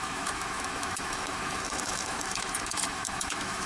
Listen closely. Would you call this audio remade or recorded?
remade